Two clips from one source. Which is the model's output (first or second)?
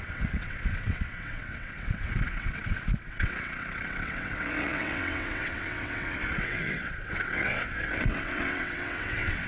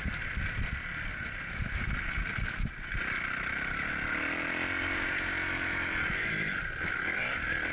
first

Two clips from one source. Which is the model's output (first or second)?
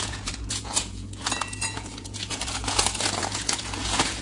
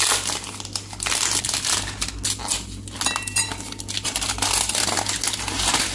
first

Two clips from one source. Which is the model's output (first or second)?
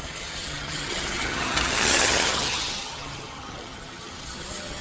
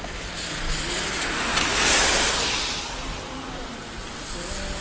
first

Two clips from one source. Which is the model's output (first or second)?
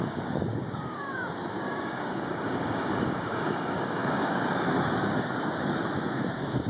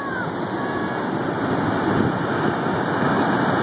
first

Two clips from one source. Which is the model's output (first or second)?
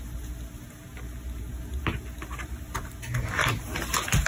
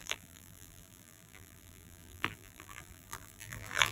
second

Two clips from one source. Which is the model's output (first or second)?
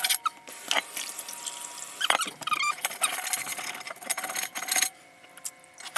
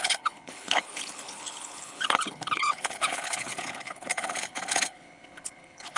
second